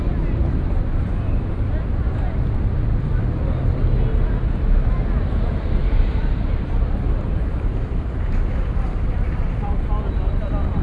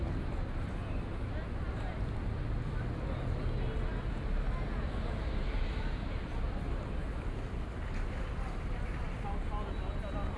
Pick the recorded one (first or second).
second